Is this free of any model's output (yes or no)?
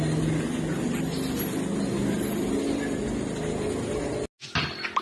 yes